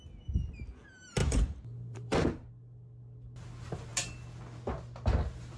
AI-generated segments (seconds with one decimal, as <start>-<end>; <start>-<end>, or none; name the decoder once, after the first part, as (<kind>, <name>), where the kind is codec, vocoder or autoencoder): 1.2-2.5 (vocoder, BigVGAN v2)